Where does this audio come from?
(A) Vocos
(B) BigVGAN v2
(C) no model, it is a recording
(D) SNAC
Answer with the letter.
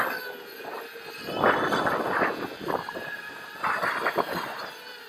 C